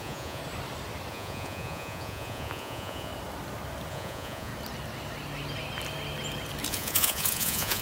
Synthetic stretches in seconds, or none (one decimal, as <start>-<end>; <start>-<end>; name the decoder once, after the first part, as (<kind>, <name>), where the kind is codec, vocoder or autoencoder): 0.0-0.4 (vocoder, Vocos); 1.1-3.1; 3.9-4.5; 6.7-7.8